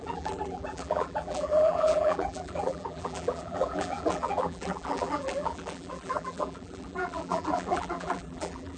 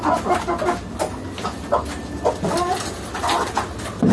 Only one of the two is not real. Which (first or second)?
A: first